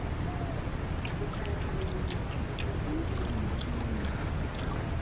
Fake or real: real